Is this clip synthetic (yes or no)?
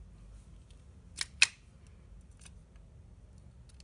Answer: no